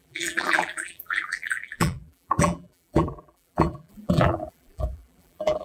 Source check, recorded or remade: remade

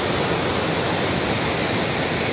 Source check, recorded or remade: recorded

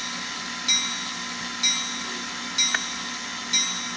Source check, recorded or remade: recorded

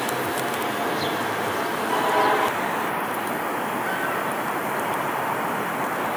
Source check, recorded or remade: recorded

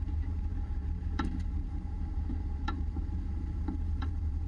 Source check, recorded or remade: remade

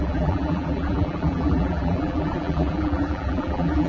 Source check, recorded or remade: remade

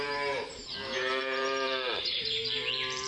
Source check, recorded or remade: remade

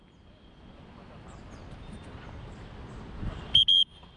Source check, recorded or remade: recorded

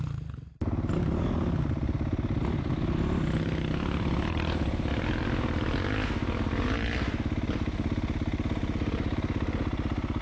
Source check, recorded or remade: recorded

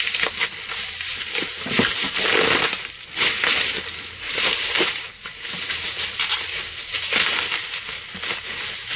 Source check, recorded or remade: recorded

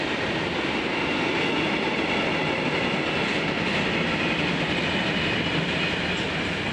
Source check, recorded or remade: recorded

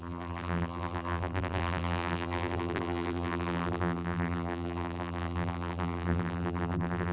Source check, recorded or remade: remade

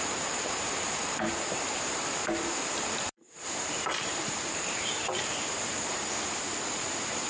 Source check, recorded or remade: remade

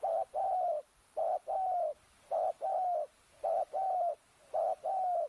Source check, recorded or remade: recorded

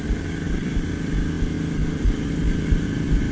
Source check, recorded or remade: recorded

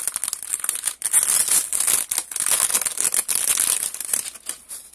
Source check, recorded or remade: recorded